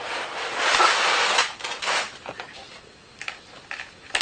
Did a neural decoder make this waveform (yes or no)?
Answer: no